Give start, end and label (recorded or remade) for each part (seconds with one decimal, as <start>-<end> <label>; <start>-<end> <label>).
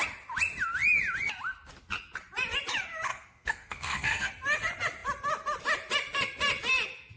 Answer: 0.0-3.1 recorded; 3.1-4.3 remade; 4.3-7.2 recorded